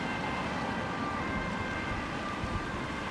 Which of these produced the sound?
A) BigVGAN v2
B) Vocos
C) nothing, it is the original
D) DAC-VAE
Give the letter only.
C